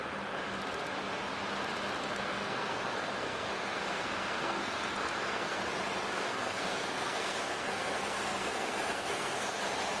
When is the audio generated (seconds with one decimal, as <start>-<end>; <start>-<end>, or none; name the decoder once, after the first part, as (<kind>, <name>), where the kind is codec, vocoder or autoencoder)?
2.0-5.6 (codec, SNAC); 6.3-9.6